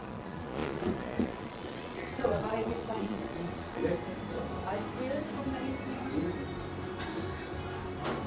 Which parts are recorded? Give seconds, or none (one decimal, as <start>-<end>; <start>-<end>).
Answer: 3.8-8.3